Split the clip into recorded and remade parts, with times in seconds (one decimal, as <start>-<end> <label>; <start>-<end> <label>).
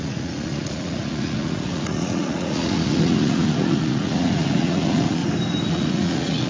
0.0-5.2 remade; 5.2-5.7 recorded; 5.7-6.5 remade